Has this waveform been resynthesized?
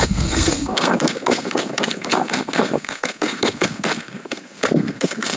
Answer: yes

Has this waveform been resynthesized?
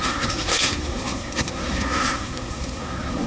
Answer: yes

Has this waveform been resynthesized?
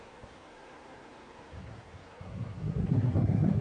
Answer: yes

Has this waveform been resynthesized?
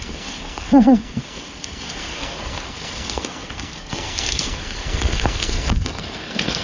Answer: yes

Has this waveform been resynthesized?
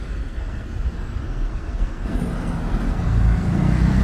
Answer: yes